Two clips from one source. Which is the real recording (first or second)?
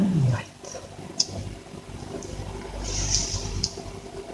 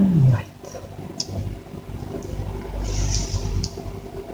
second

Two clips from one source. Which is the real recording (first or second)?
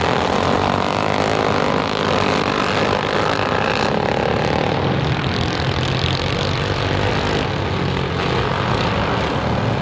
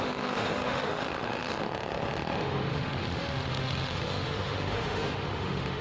first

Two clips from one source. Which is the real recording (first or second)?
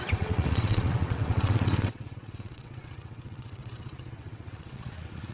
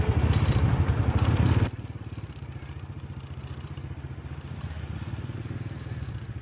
second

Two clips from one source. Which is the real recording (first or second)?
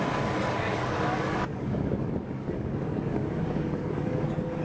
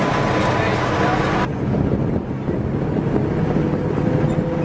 second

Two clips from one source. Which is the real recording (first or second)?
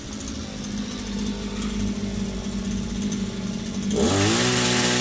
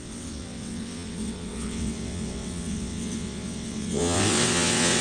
first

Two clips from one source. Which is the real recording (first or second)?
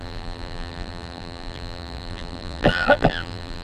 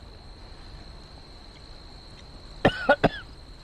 second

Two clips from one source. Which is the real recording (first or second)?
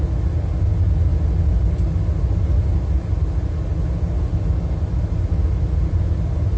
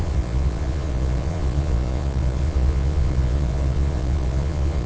first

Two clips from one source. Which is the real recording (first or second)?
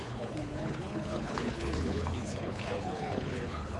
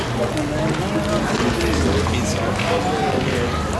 second